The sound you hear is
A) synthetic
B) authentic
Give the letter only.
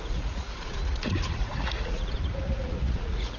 A